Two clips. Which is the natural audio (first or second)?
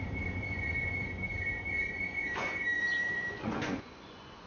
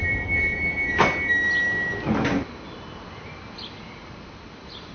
second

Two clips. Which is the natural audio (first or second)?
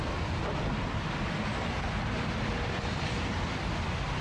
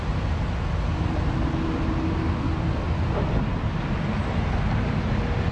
second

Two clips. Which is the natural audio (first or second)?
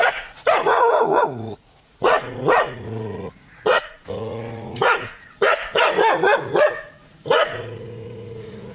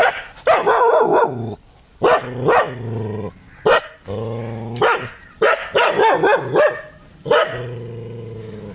second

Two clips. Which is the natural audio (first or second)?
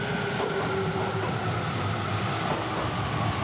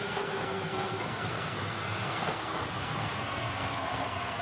first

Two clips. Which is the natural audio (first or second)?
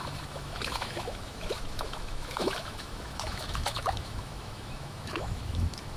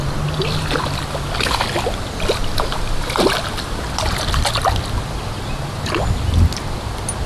second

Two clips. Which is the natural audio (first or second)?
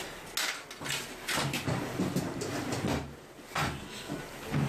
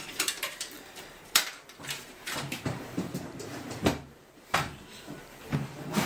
first